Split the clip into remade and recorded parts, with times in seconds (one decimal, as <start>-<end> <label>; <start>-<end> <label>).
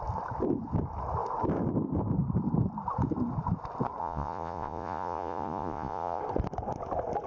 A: 0.0-4.0 recorded; 4.0-6.2 remade; 6.2-7.3 recorded